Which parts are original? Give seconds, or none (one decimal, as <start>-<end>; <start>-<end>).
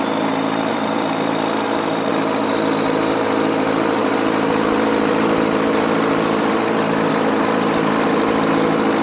none